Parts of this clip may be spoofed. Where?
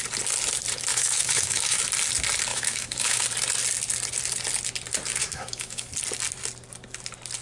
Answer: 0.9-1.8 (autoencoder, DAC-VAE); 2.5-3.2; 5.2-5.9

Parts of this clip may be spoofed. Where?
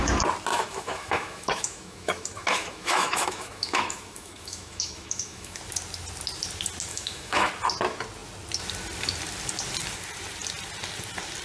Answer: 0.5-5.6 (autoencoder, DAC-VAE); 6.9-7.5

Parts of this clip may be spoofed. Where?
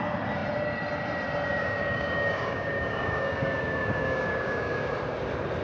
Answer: 1.5-4.9 (codec, DAC)